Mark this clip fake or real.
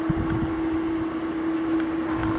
real